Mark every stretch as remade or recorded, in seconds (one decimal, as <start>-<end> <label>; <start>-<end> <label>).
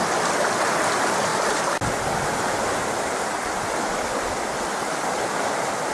0.0-5.9 recorded